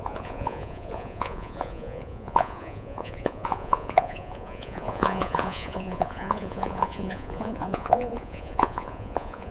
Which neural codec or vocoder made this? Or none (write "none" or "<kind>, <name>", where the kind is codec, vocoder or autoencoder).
vocoder, Vocos